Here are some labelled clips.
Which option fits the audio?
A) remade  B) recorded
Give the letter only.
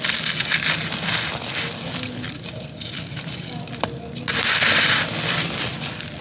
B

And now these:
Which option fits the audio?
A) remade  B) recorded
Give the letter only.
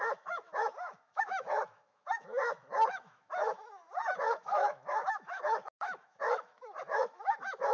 A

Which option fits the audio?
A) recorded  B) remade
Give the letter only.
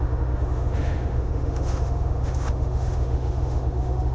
B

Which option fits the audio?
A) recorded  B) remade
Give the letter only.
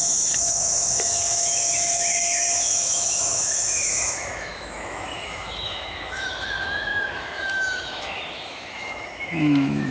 B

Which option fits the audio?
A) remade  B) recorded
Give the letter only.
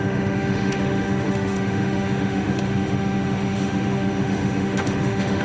A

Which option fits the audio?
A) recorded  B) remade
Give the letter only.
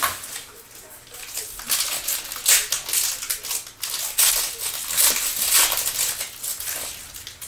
A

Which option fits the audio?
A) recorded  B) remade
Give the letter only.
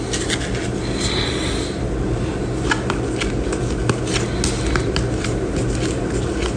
A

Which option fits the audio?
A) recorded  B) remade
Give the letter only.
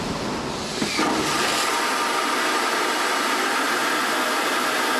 A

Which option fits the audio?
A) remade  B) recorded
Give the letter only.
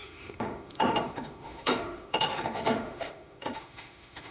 A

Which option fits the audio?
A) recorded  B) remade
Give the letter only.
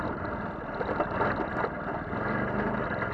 A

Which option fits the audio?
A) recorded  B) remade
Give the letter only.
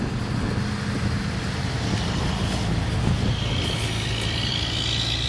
A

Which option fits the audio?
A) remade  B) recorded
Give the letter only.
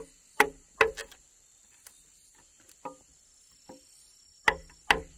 B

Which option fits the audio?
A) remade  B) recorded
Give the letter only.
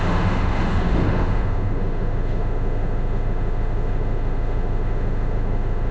A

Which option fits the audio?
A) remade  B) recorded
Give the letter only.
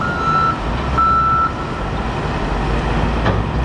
B